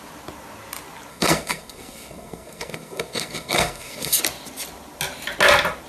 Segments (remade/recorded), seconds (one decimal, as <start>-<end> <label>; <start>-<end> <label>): 0.0-1.1 recorded; 1.1-4.2 remade; 4.2-5.9 recorded